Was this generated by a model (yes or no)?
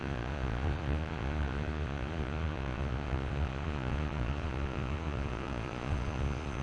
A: yes